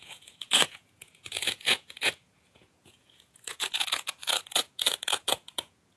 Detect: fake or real fake